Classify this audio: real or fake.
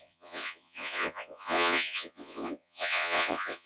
fake